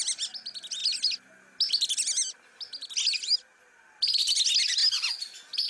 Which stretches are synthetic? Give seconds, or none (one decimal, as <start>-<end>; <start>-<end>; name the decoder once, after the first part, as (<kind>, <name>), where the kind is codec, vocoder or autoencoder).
none

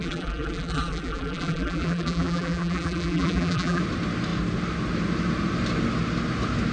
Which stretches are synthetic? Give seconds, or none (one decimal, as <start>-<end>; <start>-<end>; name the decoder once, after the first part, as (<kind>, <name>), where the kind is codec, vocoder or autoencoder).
0.0-3.8 (vocoder, BigVGAN v2)

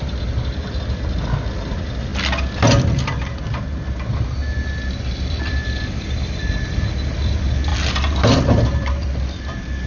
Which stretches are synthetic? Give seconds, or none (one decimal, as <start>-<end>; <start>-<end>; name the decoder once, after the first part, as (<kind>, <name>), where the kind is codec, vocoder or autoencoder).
0.0-2.1 (vocoder, BigVGAN v2); 5.2-9.9